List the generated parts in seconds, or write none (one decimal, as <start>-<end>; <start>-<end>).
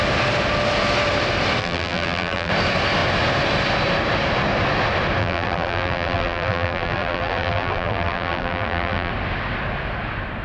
1.6-2.5; 5.2-9.1